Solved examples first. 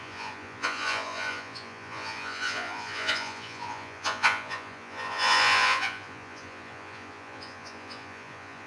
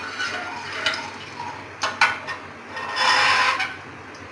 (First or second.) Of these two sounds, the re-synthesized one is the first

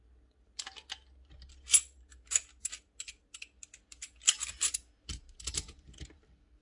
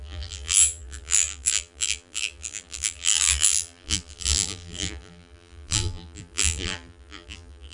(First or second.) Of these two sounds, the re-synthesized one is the second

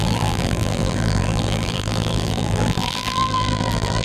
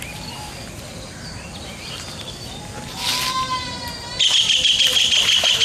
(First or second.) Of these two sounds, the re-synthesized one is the first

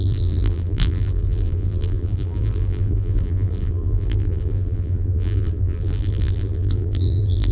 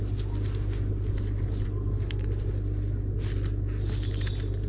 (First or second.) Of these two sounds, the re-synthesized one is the first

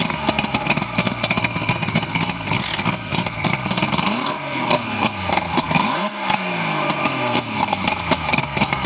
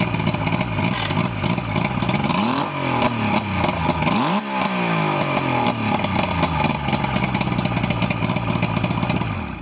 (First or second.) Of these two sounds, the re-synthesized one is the first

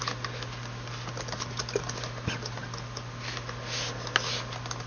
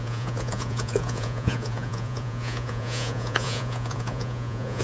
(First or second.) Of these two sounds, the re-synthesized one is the second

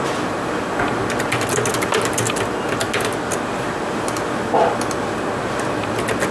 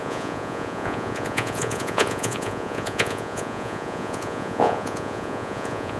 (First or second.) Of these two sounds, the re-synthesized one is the second